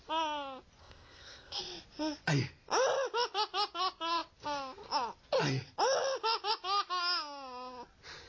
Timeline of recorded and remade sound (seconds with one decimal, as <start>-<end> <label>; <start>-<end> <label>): 0.0-0.8 recorded; 0.8-1.6 remade; 1.6-8.3 recorded